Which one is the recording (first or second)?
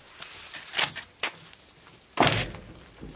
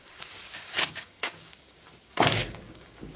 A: first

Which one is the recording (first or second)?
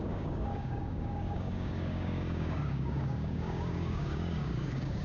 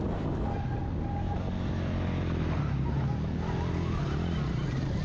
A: second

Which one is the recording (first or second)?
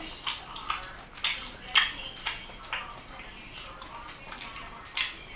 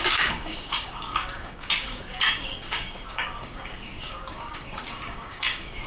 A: first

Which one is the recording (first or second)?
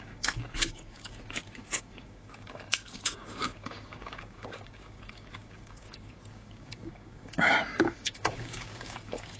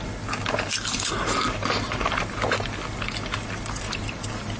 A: second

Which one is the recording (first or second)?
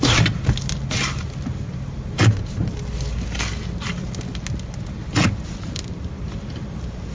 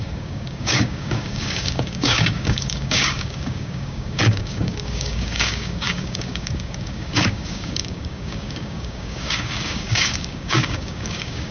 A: first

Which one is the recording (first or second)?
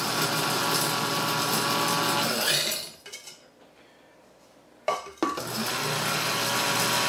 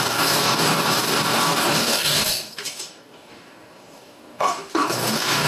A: first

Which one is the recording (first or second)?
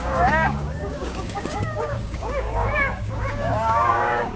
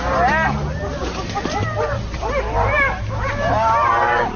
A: second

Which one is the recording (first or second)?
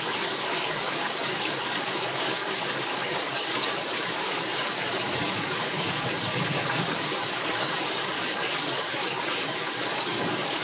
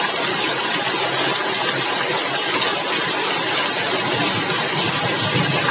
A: second